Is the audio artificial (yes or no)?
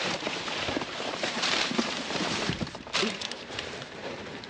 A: yes